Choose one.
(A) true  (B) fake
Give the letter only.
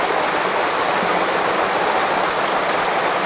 A